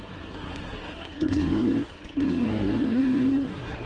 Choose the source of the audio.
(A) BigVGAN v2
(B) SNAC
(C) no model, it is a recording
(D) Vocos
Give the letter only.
B